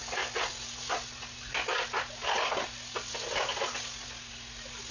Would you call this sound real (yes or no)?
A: yes